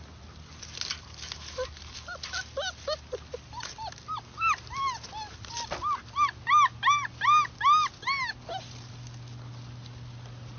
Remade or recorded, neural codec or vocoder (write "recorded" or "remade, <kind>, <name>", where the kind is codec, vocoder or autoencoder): recorded